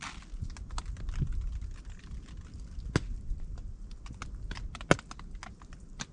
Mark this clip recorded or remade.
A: recorded